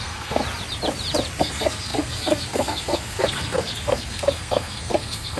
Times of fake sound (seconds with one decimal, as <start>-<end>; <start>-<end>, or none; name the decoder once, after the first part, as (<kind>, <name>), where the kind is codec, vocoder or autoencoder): 0.0-0.4 (codec, SNAC); 1.4-5.4